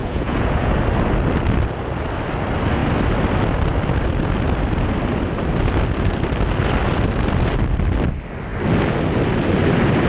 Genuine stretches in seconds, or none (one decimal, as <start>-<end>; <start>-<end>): 0.7-10.1